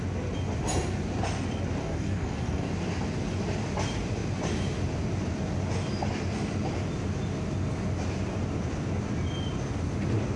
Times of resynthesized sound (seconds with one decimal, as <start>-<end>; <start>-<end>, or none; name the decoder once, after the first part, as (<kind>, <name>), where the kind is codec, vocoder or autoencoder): 1.8-2.7 (codec, DAC)